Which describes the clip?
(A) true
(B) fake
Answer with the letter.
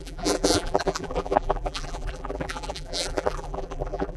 B